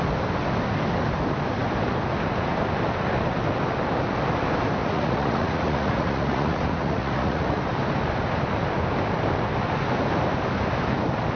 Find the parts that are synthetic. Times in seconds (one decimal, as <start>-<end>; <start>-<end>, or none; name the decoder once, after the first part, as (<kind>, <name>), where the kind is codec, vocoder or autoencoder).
4.8-7.6 (vocoder, Vocos)